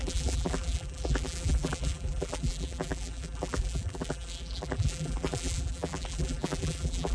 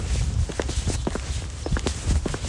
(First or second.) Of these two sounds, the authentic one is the second